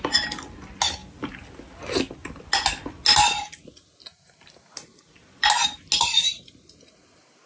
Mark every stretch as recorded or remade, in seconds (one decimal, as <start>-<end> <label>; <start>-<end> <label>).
0.0-7.5 recorded